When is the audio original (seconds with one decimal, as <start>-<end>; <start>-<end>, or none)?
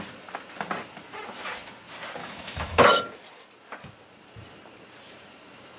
0.0-2.2; 3.0-5.8